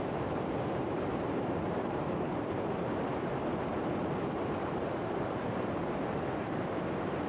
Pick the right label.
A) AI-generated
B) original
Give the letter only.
A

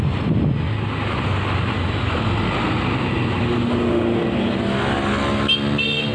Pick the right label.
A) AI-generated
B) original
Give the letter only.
B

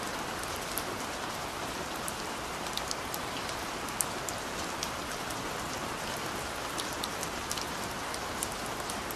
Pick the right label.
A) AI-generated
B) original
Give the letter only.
B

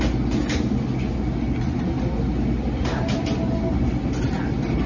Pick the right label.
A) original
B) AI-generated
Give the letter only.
A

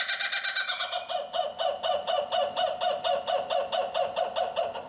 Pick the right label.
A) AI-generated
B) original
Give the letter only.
B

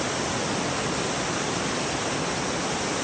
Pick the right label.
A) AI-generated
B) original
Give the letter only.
B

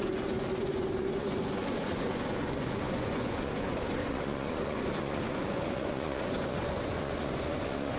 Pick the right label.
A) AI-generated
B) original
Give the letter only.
A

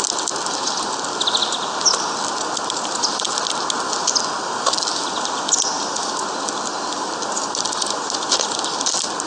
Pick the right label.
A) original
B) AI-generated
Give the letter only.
A